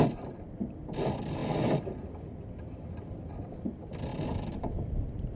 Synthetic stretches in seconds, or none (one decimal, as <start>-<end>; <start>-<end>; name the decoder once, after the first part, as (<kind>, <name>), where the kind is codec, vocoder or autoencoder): none